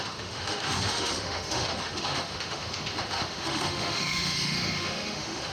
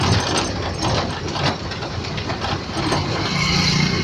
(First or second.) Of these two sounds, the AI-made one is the first